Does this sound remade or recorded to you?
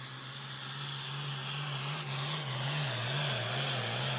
recorded